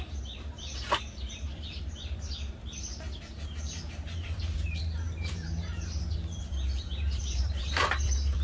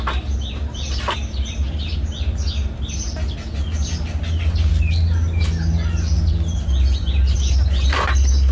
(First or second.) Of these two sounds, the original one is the second